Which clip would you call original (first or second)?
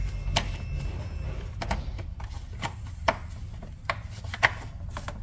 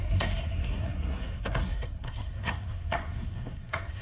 first